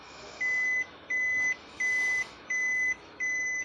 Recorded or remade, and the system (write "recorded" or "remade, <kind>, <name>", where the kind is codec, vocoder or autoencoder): remade, autoencoder, DAC-VAE